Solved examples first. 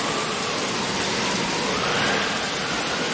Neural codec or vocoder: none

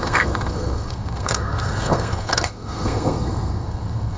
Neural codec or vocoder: codec, SNAC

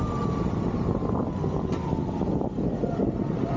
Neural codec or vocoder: none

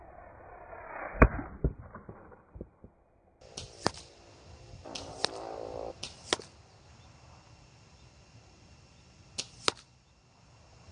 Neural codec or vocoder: vocoder, BigVGAN v2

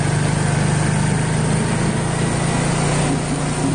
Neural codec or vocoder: none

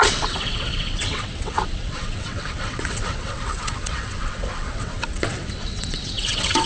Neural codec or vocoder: vocoder, WaveNeXt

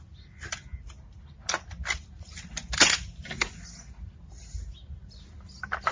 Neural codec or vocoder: none